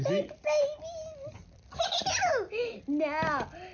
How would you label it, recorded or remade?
recorded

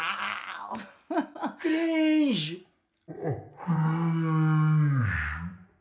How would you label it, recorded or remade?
recorded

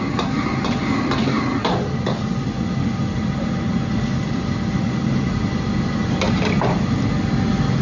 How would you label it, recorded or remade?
recorded